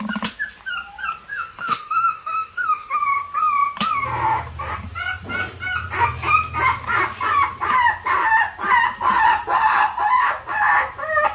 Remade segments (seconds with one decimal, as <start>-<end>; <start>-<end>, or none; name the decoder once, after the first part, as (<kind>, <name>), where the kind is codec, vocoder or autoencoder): 1.3-3.0 (autoencoder, DAC-VAE)